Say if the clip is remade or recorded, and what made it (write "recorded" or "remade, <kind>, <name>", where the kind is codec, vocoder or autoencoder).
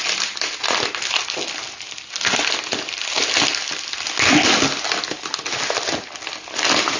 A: recorded